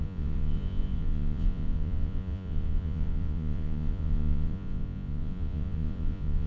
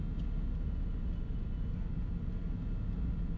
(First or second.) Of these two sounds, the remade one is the first